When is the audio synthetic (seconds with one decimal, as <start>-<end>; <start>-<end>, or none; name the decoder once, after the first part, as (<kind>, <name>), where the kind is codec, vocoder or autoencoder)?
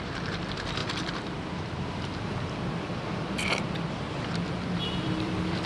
0.0-5.7 (vocoder, BigVGAN v2)